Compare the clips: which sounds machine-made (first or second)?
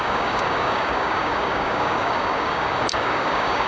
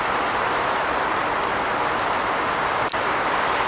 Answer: first